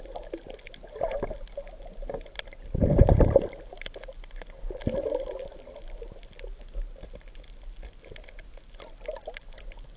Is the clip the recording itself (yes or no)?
yes